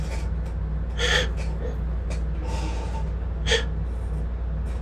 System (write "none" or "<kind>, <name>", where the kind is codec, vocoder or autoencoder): none